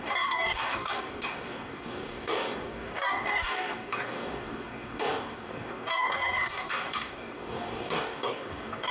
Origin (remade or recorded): remade